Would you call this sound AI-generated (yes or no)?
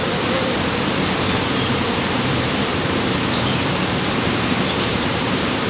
yes